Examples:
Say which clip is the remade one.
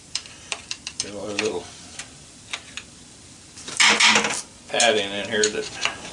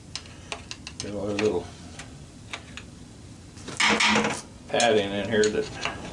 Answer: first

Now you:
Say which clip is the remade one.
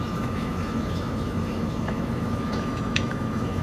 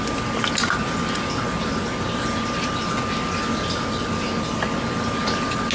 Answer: first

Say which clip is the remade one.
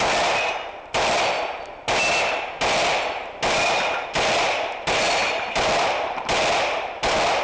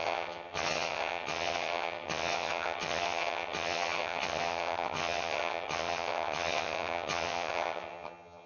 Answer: second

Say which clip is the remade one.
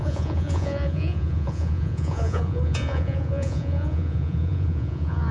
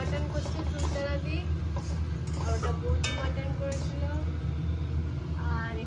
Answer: first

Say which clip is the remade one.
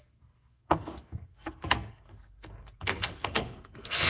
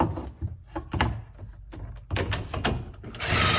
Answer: first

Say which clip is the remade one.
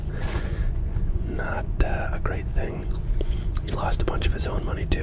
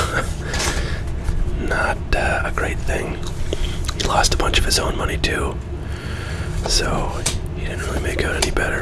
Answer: first